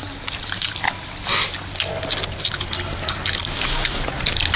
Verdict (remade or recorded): remade